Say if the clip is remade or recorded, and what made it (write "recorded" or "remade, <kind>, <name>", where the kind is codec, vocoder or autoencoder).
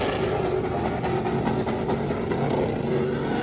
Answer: recorded